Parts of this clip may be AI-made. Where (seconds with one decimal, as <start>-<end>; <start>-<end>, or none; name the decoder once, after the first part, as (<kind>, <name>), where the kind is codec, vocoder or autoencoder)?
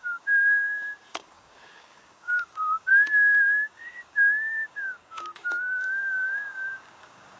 0.0-2.9 (codec, DAC); 3.4-7.4